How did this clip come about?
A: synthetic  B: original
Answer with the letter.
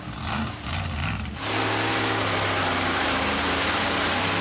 B